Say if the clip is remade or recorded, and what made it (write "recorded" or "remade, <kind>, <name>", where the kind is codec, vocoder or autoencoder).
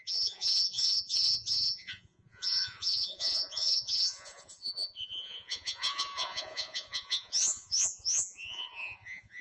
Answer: remade, vocoder, Vocos